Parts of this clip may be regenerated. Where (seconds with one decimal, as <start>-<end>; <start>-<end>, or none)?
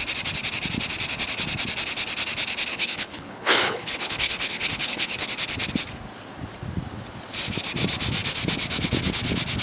2.7-5.3